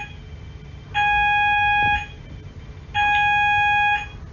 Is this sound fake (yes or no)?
no